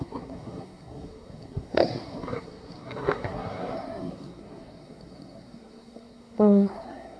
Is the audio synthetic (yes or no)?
yes